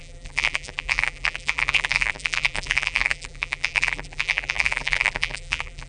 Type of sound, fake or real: fake